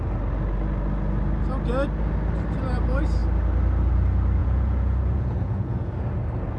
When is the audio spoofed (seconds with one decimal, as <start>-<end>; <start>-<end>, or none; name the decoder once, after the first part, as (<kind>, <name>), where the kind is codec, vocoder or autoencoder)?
4.4-5.9 (vocoder, Vocos)